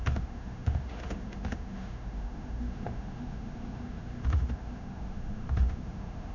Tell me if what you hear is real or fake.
fake